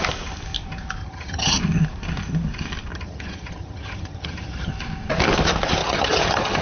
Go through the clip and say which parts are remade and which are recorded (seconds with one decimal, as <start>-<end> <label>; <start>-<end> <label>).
0.0-1.0 recorded; 1.0-1.6 remade; 1.6-2.9 recorded; 2.9-4.7 remade; 4.7-5.8 recorded; 5.8-6.6 remade